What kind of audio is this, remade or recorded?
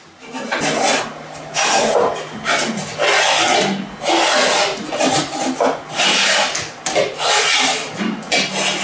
recorded